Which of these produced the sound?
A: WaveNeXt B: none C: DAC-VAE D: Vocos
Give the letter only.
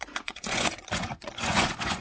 D